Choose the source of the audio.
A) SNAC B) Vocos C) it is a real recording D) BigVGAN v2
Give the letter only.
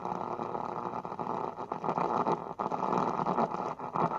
C